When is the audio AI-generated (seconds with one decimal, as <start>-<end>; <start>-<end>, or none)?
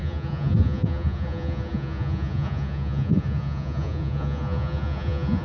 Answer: 0.0-5.4